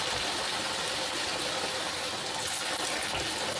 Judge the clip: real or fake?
real